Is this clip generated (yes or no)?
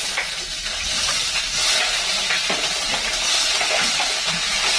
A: no